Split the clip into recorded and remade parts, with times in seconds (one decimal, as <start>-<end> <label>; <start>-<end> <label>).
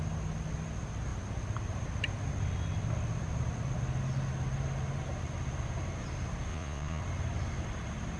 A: 0.0-6.5 recorded; 6.5-7.0 remade; 7.0-8.2 recorded